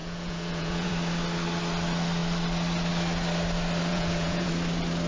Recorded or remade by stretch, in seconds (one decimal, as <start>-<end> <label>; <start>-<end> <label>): 0.0-0.9 remade; 0.9-3.9 recorded; 3.9-4.5 remade; 4.5-5.1 recorded

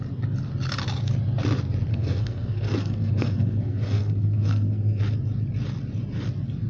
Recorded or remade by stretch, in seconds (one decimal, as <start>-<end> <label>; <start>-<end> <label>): 0.0-1.9 recorded; 1.9-5.0 remade; 5.0-6.7 recorded

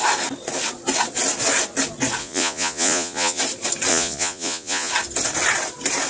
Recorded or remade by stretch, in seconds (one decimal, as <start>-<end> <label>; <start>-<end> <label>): 0.0-2.2 recorded; 2.2-3.4 remade; 3.4-3.9 recorded; 3.9-4.9 remade; 4.9-6.1 recorded

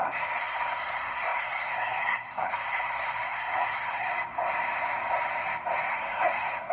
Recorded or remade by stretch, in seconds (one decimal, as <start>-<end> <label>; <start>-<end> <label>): 0.0-4.1 remade; 4.1-5.9 recorded; 5.9-6.7 remade

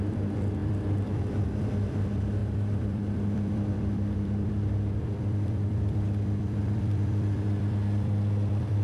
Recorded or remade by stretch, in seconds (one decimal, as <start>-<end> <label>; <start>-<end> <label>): 0.0-8.8 remade

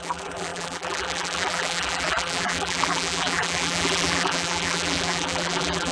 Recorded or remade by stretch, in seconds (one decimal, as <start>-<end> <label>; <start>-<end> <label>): 0.0-5.9 remade